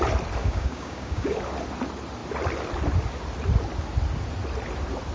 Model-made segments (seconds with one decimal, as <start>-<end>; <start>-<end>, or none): 0.4-1.3